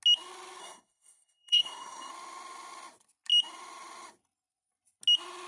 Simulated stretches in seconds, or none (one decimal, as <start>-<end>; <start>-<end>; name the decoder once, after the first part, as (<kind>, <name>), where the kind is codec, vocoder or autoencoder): 0.6-2.1 (codec, SNAC)